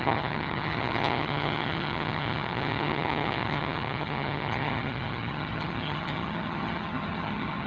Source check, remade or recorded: remade